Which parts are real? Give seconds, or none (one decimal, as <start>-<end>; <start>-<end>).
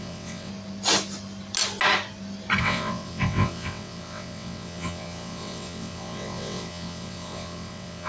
0.5-2.6